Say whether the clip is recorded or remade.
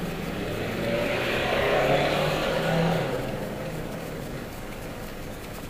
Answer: remade